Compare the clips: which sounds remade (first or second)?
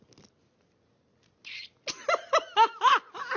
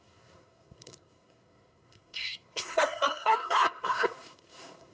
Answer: second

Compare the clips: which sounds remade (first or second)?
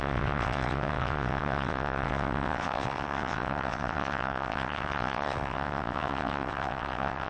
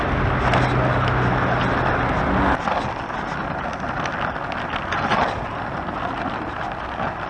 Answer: first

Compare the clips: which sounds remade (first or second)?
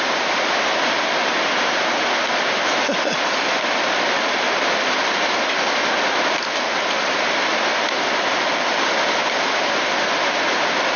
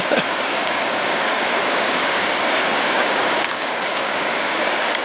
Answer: second